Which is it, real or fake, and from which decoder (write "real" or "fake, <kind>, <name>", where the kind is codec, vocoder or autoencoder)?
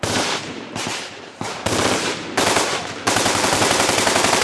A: fake, vocoder, BigVGAN v2